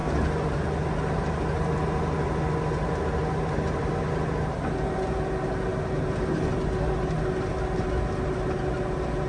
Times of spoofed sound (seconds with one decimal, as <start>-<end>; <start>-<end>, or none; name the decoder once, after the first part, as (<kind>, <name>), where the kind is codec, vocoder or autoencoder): none